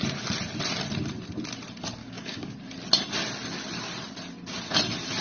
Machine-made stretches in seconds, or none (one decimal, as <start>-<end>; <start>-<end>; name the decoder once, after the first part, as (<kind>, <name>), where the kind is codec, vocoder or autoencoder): 2.0-2.5 (codec, DAC)